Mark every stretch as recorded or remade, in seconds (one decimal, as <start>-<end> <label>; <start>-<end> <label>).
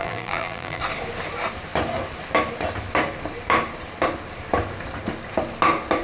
0.0-0.8 remade; 0.8-6.0 recorded